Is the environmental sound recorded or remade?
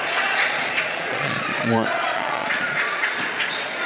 remade